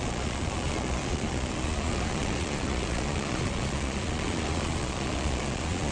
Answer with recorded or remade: remade